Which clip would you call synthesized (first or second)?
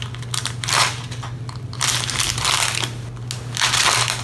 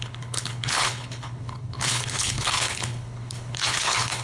second